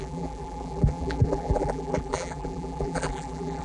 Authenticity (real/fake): fake